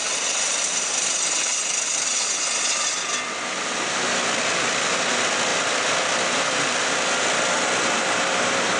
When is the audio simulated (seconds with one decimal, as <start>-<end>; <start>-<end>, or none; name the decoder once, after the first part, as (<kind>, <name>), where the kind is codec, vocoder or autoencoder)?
0.0-0.7 (vocoder, BigVGAN v2); 1.5-2.2